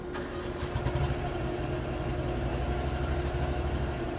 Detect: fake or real real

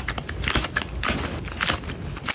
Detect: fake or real real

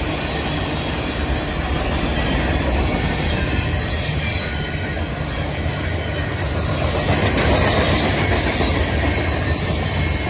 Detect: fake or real real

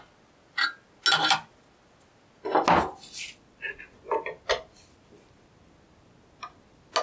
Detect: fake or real real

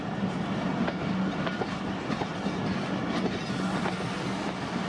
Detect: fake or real real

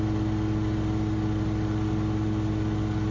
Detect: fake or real real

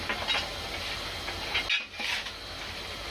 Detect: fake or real real